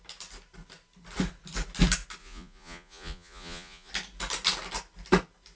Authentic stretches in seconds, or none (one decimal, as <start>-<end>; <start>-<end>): 0.0-2.2; 3.9-5.6